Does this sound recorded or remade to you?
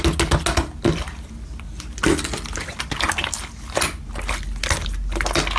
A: recorded